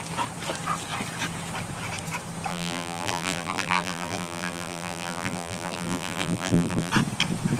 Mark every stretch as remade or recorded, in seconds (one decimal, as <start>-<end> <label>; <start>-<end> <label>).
0.0-2.5 recorded; 2.5-6.9 remade; 6.9-7.6 recorded